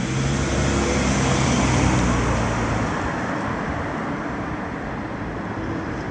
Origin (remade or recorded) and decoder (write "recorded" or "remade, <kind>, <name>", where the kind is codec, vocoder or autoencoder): recorded